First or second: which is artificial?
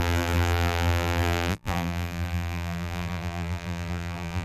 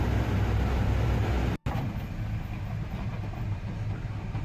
first